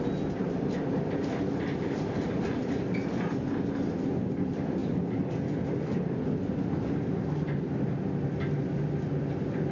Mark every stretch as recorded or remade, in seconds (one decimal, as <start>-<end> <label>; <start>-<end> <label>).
0.0-9.7 recorded